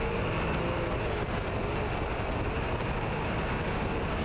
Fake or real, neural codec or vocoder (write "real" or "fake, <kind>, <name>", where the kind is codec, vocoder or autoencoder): real